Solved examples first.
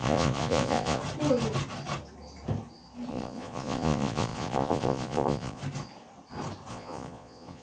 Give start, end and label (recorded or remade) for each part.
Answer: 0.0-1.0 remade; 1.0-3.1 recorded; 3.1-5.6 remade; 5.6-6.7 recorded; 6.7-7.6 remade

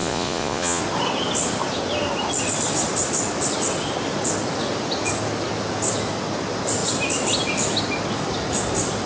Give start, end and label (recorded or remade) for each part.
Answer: 0.0-0.8 remade; 0.8-9.1 recorded

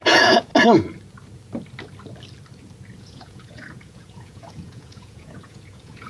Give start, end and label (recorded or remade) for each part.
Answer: 0.0-0.5 remade; 0.5-3.0 recorded; 3.0-6.1 remade

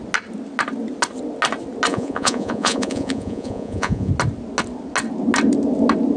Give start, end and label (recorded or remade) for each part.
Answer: 0.0-1.9 recorded; 1.9-4.1 remade; 4.1-6.2 recorded

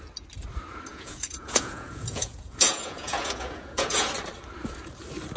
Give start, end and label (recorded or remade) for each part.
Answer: 0.0-0.9 recorded; 0.9-4.1 remade; 4.1-5.4 recorded